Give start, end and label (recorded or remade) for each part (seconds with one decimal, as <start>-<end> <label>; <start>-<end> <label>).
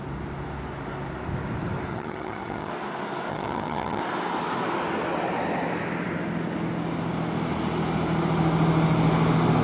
0.0-1.9 recorded; 1.9-2.7 remade; 2.7-3.3 recorded; 3.3-4.0 remade; 4.0-9.6 recorded